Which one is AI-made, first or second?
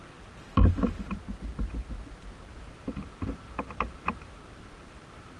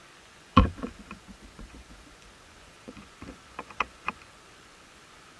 second